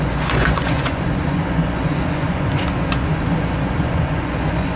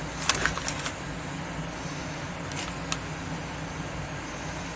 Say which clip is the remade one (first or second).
first